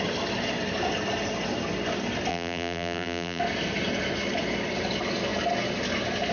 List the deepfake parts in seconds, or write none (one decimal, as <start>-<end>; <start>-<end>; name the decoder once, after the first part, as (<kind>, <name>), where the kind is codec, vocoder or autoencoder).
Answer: 2.3-3.4 (vocoder, BigVGAN v2)